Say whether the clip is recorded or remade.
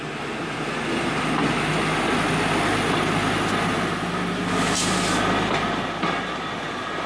recorded